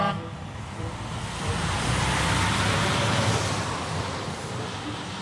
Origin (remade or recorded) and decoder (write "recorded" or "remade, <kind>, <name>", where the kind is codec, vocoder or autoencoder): remade, vocoder, BigVGAN v2